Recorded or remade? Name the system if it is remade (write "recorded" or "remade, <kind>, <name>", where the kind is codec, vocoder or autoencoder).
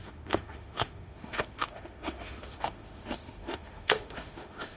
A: remade, autoencoder, DAC-VAE